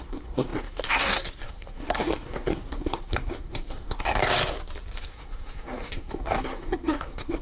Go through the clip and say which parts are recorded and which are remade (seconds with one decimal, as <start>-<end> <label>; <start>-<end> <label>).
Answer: 0.0-4.2 remade; 4.2-5.0 recorded; 5.0-7.4 remade